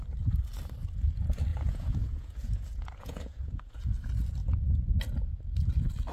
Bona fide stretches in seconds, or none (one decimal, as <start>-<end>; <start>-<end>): 0.0-1.5; 3.8-6.1